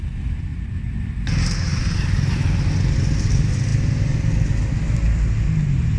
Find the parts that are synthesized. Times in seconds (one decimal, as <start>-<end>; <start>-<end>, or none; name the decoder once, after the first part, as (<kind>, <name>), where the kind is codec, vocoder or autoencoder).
none